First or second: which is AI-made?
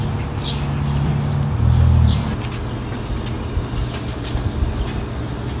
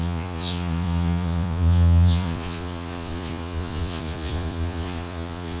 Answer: second